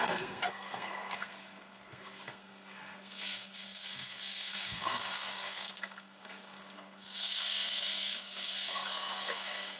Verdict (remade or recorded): remade